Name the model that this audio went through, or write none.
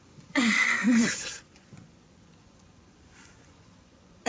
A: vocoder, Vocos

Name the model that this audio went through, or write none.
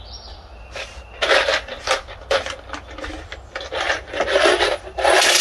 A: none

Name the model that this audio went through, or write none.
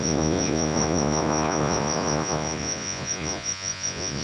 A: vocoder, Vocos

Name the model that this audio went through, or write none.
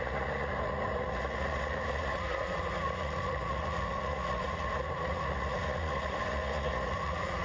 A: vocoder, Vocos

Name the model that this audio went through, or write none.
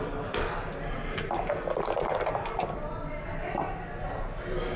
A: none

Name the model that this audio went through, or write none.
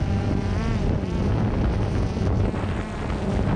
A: none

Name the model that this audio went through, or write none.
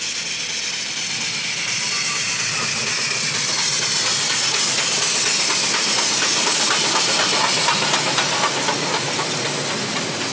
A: none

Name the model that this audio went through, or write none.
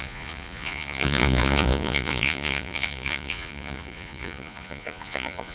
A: vocoder, Vocos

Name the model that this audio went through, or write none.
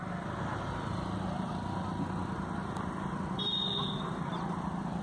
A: none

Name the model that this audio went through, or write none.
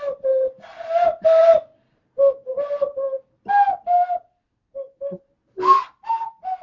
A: none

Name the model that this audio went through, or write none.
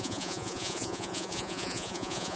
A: vocoder, Vocos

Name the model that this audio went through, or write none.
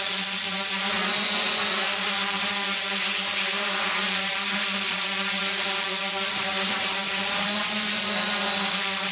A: vocoder, Vocos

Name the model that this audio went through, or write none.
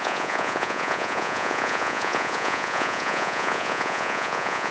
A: vocoder, Vocos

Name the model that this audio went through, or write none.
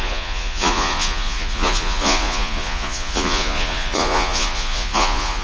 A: vocoder, Vocos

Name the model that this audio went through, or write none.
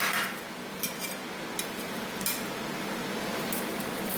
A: none